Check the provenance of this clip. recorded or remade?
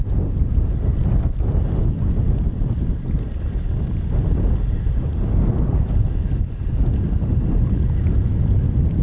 recorded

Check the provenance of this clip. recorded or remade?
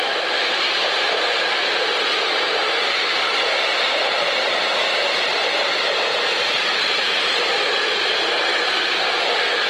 recorded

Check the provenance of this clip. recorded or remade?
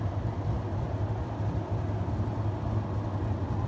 recorded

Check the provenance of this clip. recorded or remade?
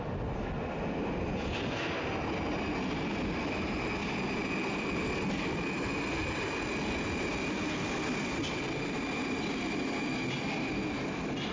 recorded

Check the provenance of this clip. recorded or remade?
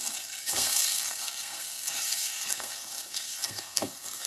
remade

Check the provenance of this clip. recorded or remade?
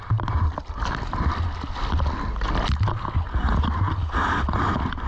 recorded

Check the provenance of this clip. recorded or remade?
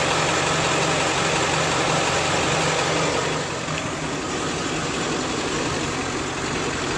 recorded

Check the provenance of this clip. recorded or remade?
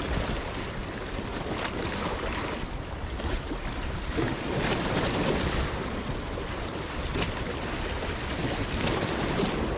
recorded